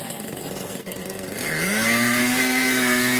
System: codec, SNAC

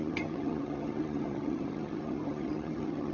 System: vocoder, HiFi-GAN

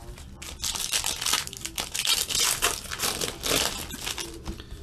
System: none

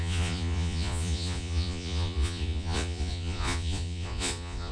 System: vocoder, Vocos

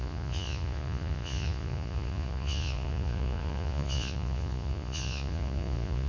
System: vocoder, Vocos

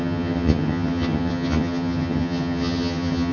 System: vocoder, HiFi-GAN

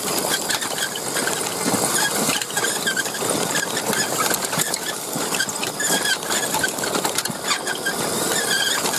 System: vocoder, BigVGAN v2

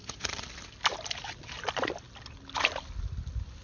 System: none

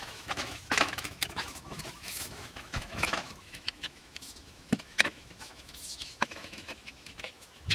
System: autoencoder, DAC-VAE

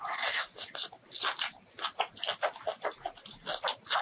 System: none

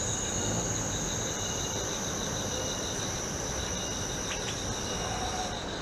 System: none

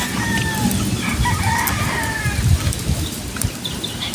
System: none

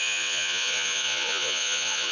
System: vocoder, Vocos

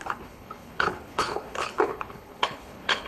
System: codec, HILCodec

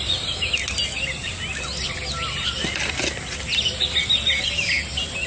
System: none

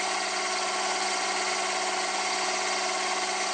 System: none